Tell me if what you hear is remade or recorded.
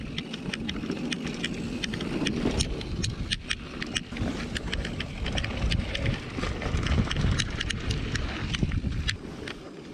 recorded